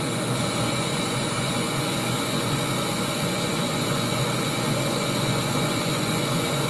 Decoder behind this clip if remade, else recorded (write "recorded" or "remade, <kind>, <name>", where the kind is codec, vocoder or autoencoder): remade, vocoder, Vocos